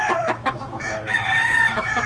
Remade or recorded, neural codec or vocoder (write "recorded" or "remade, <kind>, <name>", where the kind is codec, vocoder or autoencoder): remade, autoencoder, DAC-VAE